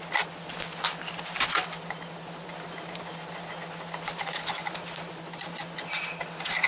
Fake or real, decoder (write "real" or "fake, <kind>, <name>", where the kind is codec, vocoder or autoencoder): real